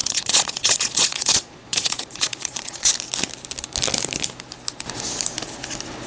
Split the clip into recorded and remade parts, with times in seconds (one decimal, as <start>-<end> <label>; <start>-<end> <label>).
0.0-2.9 remade; 2.9-6.1 recorded